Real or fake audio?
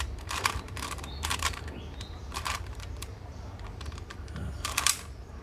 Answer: fake